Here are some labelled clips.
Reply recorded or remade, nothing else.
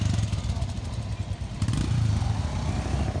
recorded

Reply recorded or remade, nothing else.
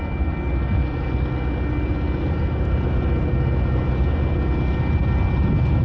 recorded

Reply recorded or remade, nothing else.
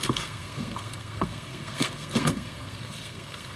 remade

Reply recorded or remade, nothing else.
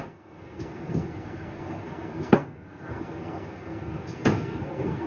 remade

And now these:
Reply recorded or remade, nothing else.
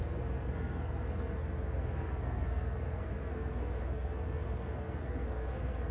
remade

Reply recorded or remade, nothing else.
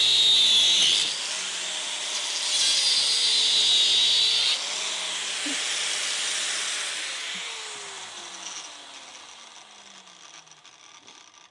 recorded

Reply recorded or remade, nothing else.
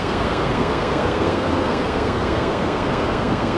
remade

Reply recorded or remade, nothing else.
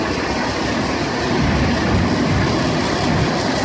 recorded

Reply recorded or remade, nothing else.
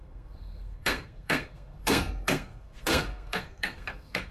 remade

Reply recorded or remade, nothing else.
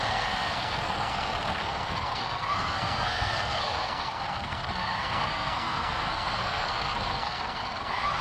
remade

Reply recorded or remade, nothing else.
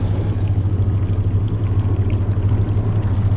recorded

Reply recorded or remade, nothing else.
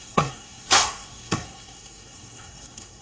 remade